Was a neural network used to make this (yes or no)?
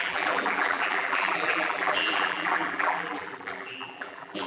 yes